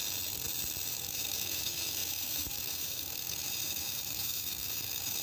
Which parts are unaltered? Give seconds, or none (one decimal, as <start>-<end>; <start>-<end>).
0.0-0.9